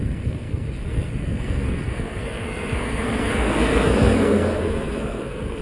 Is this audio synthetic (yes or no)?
yes